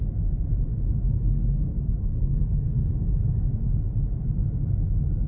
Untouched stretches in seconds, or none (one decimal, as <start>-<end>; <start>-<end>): 0.0-1.7; 2.6-5.3